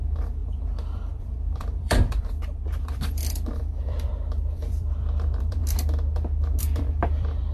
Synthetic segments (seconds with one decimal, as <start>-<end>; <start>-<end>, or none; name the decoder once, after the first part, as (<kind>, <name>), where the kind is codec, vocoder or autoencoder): 0.0-5.6 (vocoder, BigVGAN v2); 6.6-7.5

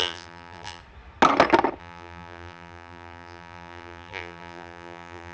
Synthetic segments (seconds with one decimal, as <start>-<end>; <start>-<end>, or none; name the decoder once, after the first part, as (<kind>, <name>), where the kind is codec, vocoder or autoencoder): 0.0-0.8 (vocoder, BigVGAN v2); 1.8-5.3